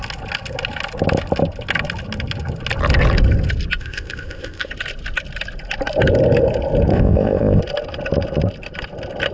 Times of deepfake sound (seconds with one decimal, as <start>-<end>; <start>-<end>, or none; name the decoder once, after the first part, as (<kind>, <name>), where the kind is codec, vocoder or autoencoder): 3.8-4.7 (codec, ZipCodec); 6.9-7.6